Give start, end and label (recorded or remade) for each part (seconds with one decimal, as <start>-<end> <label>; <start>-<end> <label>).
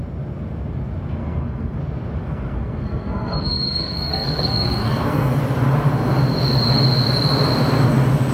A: 0.0-1.2 recorded; 1.2-1.8 remade; 1.8-2.2 recorded; 2.2-5.4 remade; 5.4-8.3 recorded